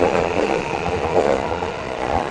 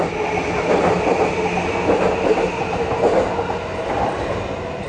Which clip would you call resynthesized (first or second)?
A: first